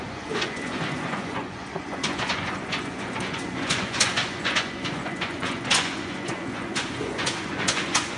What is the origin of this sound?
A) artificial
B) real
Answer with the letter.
A